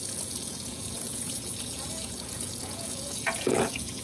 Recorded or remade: remade